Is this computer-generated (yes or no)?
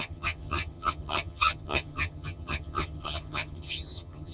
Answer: yes